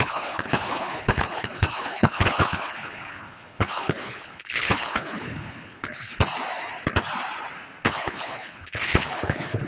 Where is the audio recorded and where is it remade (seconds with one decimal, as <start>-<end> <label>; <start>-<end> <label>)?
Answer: 0.0-6.1 remade; 6.1-7.8 recorded; 7.8-9.7 remade